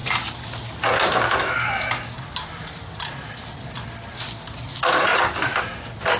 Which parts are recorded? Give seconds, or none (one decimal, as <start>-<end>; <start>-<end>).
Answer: 0.0-6.2

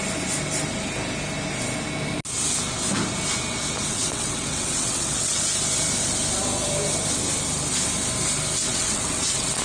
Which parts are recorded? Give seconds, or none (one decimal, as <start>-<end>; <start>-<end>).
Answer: 0.0-3.9; 5.4-8.7

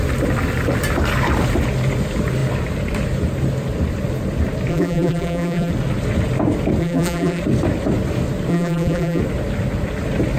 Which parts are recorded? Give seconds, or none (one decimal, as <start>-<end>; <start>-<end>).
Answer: 0.0-4.7; 5.7-6.8; 7.4-8.5; 9.2-10.4